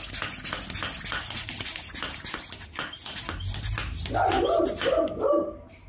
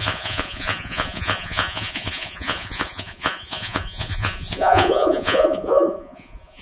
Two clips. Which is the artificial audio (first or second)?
second